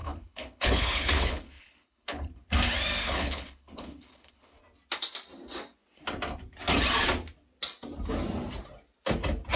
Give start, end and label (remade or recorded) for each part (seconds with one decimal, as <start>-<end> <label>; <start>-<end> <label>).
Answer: 0.0-2.2 remade; 2.2-3.0 recorded; 3.0-4.6 remade; 4.6-9.6 recorded